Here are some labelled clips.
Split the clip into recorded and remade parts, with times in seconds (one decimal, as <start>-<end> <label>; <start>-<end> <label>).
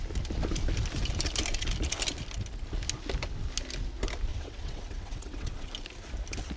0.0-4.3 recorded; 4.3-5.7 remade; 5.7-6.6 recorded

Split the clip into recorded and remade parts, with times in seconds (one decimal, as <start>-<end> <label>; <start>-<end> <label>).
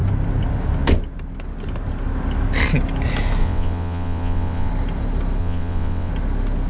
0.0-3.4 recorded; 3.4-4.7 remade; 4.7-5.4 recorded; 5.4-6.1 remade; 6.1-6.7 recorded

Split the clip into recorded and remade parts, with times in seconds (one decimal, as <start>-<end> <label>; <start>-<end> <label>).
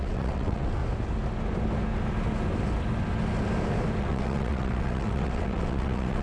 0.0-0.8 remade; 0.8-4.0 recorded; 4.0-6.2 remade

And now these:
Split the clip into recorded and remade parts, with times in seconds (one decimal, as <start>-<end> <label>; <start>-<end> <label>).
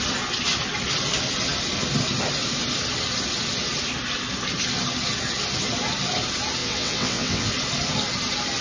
0.0-6.6 recorded; 6.6-7.5 remade; 7.5-8.6 recorded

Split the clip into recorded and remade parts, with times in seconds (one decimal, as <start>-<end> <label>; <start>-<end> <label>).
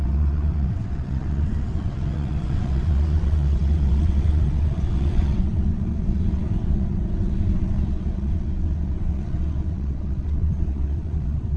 0.0-11.6 remade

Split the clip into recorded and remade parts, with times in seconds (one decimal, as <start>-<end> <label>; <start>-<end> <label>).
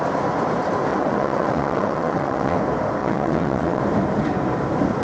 0.0-0.9 recorded; 0.9-2.6 remade; 2.6-3.0 recorded; 3.0-3.8 remade; 3.8-5.0 recorded